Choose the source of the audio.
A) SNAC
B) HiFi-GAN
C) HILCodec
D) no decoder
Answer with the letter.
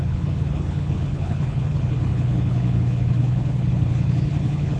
C